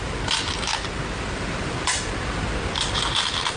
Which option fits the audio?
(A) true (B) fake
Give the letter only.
A